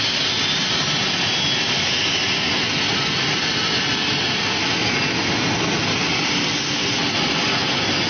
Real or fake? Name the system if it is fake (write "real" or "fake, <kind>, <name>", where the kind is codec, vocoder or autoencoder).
real